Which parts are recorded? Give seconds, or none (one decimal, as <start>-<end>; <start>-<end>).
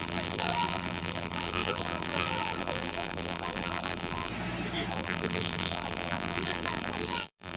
4.3-4.9